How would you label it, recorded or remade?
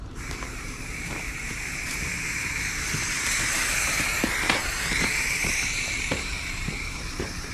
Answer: remade